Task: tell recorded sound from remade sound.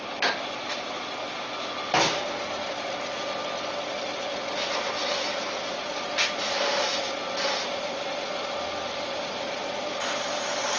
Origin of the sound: remade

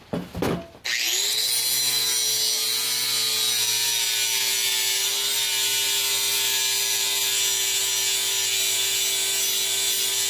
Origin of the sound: recorded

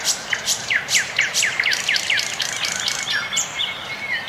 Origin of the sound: remade